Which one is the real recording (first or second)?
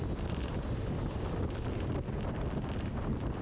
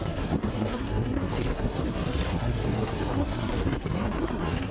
first